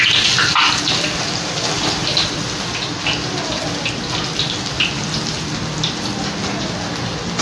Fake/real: real